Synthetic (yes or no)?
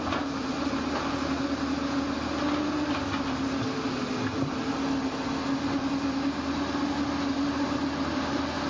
no